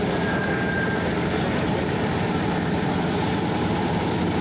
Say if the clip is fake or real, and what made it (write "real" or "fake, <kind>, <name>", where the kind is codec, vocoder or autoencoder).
real